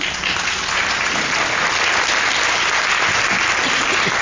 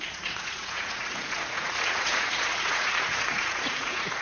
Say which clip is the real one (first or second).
first